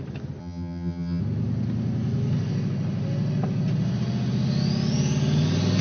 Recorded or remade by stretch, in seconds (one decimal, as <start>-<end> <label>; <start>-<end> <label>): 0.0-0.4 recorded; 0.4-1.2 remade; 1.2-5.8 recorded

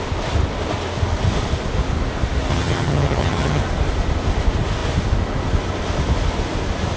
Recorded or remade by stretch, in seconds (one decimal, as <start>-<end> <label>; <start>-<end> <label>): 0.0-2.5 recorded; 2.5-3.6 remade; 3.6-7.0 recorded

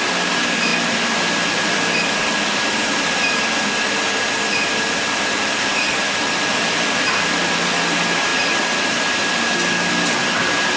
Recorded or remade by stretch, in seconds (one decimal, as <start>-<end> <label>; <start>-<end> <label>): 0.0-10.8 recorded

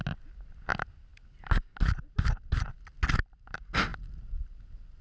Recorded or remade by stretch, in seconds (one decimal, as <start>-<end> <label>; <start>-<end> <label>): 0.0-5.0 recorded